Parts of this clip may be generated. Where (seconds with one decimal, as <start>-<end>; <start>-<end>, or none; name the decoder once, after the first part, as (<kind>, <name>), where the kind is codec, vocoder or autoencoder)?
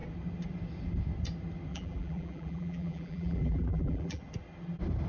1.7-4.2 (vocoder, BigVGAN v2)